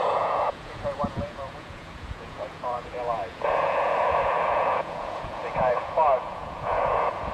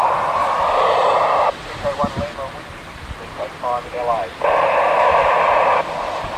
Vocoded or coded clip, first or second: first